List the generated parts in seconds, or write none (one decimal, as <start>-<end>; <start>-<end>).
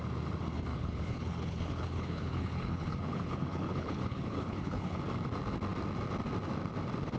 0.7-5.0